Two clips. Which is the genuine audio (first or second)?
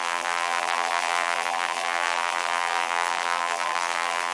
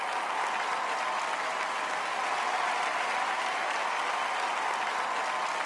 second